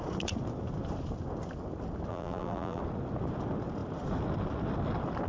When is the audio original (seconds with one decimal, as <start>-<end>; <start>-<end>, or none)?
0.0-2.1; 2.8-5.3